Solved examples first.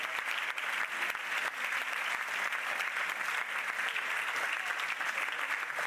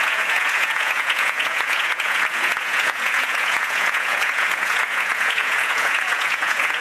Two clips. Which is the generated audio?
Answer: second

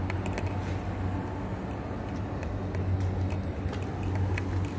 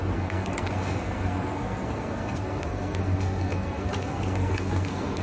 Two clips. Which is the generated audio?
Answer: second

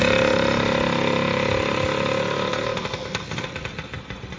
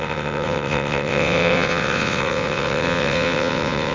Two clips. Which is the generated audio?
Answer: second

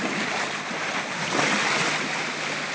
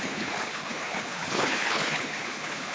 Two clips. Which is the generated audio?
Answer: second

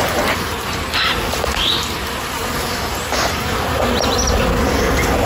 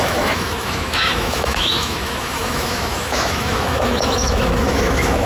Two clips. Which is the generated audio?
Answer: second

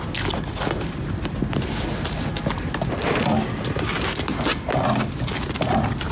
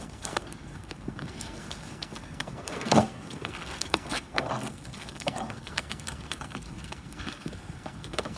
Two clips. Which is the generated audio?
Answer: second